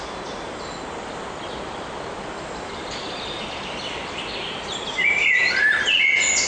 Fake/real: real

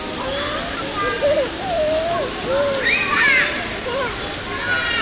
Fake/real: real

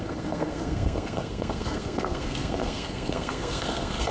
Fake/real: fake